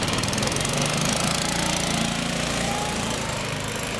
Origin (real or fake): fake